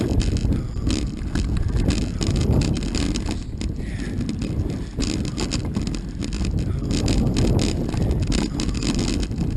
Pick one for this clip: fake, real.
real